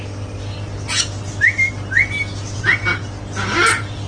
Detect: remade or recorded recorded